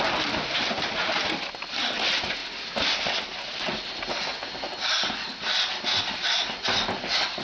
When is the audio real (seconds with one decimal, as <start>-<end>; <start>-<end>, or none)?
0.0-7.4